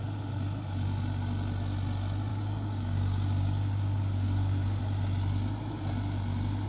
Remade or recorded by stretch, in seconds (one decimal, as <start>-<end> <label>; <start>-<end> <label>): 0.0-2.3 recorded; 2.3-4.8 remade; 4.8-6.7 recorded